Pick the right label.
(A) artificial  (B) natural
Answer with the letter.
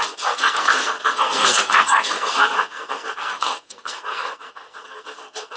A